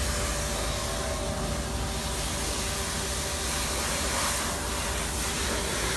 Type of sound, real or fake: real